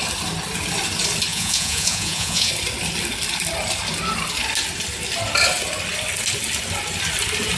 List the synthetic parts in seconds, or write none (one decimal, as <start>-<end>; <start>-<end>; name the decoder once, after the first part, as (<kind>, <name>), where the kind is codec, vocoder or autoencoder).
1.3-2.5 (vocoder, Vocos)